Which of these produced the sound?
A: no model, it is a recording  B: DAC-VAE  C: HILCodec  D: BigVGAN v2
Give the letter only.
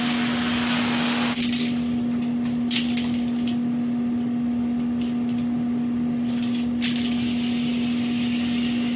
A